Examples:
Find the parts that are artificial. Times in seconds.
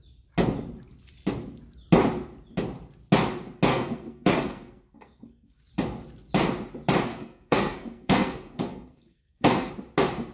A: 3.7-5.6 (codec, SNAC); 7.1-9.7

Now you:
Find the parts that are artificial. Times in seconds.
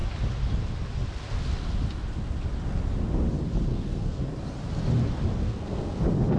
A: 3.7-4.2 (codec, SNAC); 5.4-6.0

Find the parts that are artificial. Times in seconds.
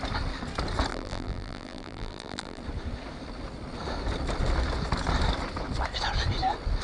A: 0.9-2.6 (vocoder, BigVGAN v2)